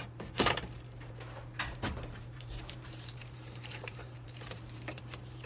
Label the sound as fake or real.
fake